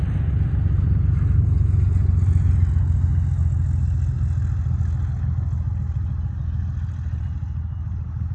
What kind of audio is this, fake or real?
real